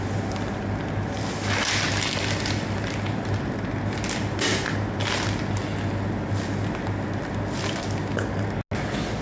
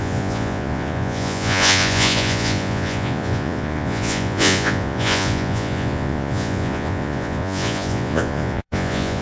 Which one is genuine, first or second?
first